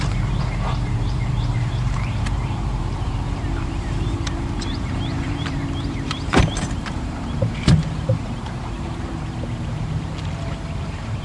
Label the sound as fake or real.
fake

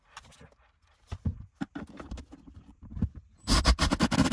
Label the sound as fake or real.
real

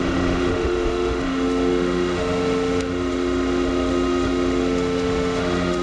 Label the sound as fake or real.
fake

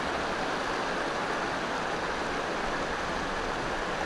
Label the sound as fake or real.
real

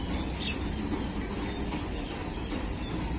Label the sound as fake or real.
real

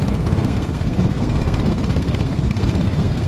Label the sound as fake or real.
fake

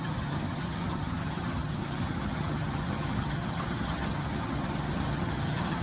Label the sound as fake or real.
fake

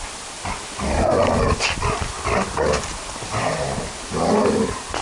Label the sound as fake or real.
real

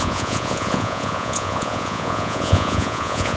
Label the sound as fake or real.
fake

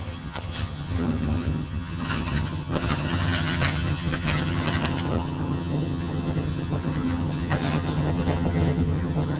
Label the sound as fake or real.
fake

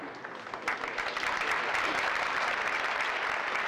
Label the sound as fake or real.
real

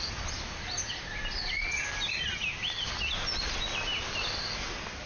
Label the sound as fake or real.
real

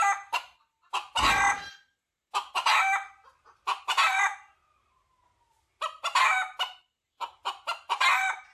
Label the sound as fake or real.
real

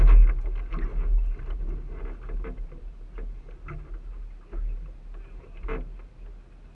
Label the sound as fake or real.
real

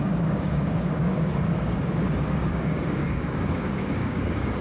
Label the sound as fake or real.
fake